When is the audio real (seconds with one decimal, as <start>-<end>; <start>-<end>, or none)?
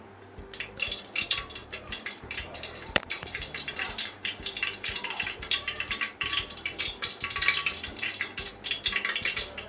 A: 0.0-1.6; 6.8-7.9; 8.5-9.7